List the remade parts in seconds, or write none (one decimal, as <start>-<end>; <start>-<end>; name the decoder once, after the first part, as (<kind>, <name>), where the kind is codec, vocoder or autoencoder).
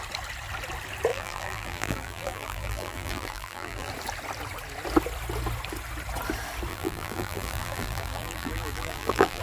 1.1-3.9 (vocoder, BigVGAN v2); 6.7-9.4